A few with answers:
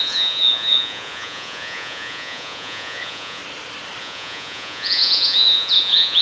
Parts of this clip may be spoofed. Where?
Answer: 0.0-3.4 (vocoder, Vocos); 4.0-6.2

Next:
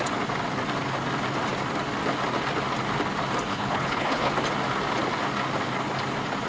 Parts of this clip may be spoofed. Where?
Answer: 3.5-4.3 (codec, HILCodec)

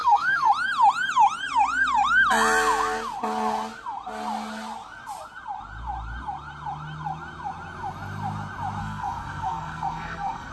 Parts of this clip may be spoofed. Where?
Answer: 0.0-0.5 (codec, SNAC); 8.8-10.5

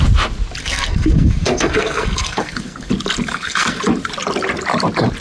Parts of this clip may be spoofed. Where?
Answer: 0.6-2.9 (codec, SNAC); 3.3-3.8

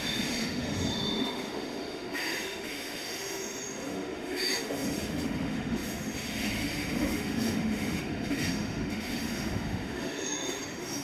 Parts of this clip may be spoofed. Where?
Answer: 0.0-11.0 (autoencoder, DAC-VAE)